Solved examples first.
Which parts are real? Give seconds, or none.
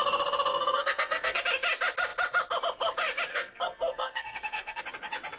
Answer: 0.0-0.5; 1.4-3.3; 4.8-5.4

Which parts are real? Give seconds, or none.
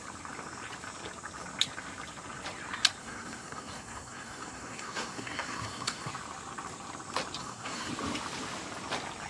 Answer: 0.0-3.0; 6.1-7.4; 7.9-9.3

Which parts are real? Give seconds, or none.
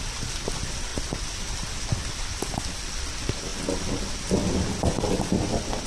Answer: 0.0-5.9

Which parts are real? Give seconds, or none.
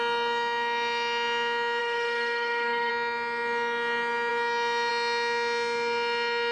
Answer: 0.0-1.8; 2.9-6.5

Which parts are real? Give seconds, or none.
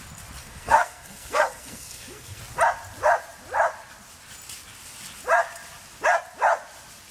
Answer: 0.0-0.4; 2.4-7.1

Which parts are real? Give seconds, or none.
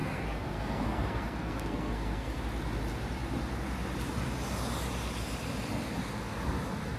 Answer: 2.4-7.0